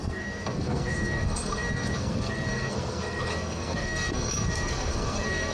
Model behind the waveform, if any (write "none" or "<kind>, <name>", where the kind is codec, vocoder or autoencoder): codec, SNAC